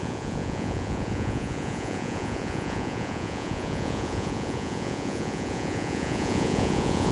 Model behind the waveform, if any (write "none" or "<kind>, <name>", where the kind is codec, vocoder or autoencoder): vocoder, Vocos